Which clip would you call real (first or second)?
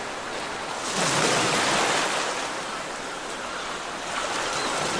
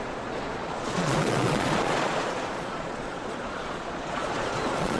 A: first